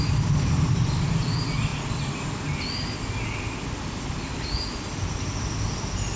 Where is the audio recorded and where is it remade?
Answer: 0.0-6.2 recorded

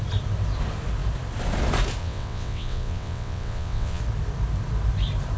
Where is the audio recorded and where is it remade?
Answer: 0.0-2.0 recorded; 2.0-4.0 remade; 4.0-5.4 recorded

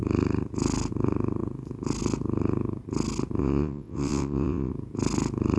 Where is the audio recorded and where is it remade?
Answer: 0.0-3.4 recorded; 3.4-4.7 remade; 4.7-5.6 recorded